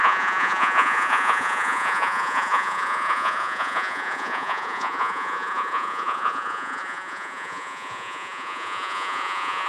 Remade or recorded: remade